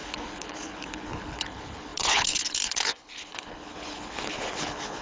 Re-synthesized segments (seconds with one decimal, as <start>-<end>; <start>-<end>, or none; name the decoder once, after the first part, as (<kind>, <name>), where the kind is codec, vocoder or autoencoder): 0.0-5.0 (codec, HILCodec)